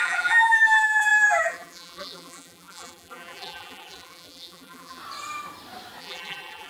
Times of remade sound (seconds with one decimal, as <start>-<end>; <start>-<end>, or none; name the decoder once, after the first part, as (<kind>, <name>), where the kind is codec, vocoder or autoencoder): 0.0-5.0 (vocoder, BigVGAN v2); 6.0-6.7